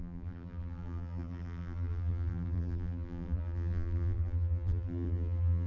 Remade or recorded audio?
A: remade